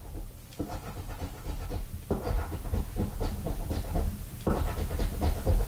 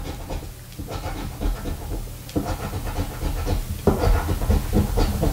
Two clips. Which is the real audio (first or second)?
second